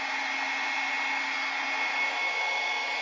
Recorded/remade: recorded